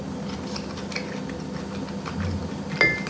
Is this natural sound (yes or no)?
yes